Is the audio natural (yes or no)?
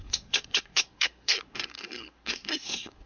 no